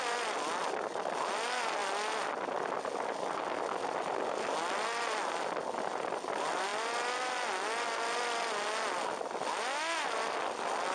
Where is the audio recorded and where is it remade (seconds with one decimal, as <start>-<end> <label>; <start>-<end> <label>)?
0.0-10.9 recorded